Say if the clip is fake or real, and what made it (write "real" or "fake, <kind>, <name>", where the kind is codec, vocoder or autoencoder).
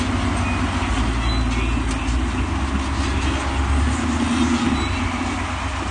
real